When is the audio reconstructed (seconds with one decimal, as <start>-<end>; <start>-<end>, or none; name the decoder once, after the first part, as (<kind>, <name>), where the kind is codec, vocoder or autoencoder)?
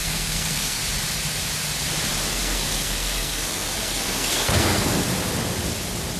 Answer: 0.0-0.8 (codec, SNAC); 2.3-5.0